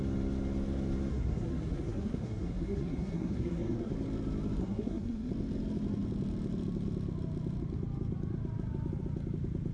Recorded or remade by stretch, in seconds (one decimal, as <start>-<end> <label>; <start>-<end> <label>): 0.0-1.1 recorded; 1.1-3.9 remade; 3.9-4.6 recorded; 4.6-5.3 remade; 5.3-9.7 recorded